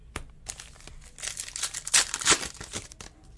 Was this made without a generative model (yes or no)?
yes